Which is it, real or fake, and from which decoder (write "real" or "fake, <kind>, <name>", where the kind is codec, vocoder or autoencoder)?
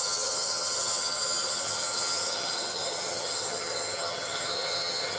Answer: fake, vocoder, HiFi-GAN